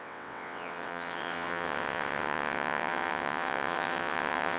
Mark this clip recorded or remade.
remade